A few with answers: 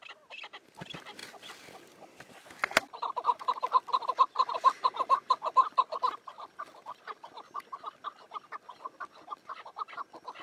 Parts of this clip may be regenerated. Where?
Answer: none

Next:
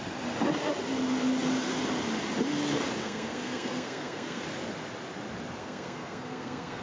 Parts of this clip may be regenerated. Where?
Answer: 3.0-4.4 (codec, SNAC); 5.6-6.8